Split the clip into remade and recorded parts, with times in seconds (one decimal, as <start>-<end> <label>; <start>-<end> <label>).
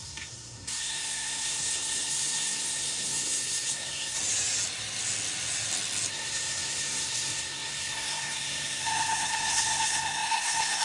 0.0-4.2 remade; 4.2-6.1 recorded; 6.1-10.8 remade